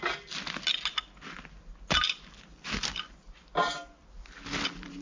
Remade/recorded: recorded